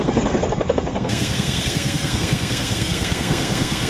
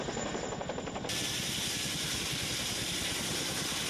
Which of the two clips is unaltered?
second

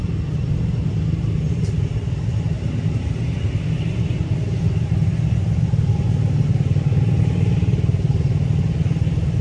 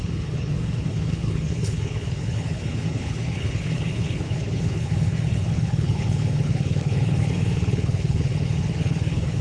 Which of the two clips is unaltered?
first